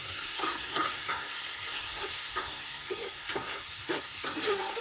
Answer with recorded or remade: remade